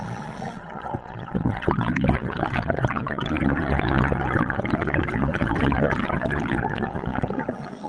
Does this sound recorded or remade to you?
remade